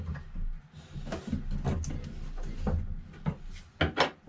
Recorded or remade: recorded